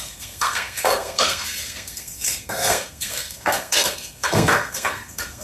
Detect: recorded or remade remade